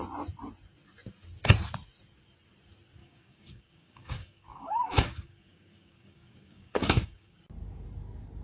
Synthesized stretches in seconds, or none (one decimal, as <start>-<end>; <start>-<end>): 3.0-7.4